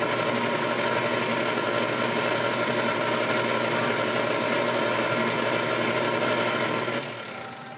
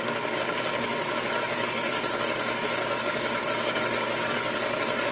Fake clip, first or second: second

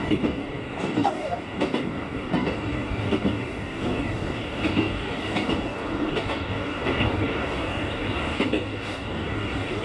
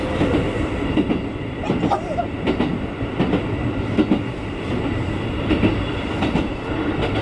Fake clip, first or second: first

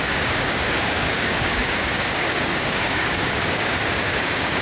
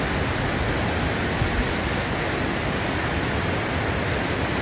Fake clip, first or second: first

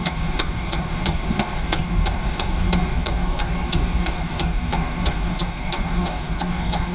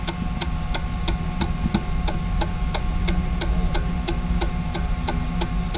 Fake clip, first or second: first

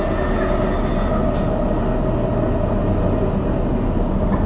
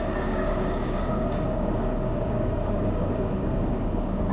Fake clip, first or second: second